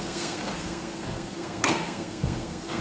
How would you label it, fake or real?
fake